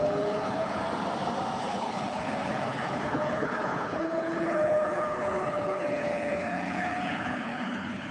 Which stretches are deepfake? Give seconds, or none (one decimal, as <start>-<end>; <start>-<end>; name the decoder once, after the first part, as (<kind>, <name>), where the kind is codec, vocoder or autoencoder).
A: 0.0-0.8 (codec, HILCodec); 1.6-8.1